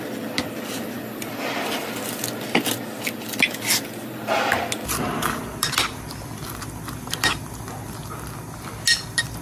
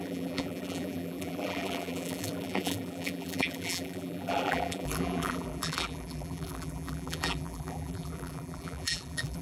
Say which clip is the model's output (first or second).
second